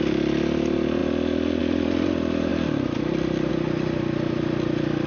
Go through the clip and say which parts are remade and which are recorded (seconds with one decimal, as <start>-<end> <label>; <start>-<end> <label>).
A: 0.0-5.1 recorded